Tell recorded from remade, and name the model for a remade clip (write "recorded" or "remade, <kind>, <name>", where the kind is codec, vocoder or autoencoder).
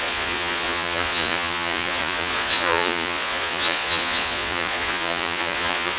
remade, vocoder, Vocos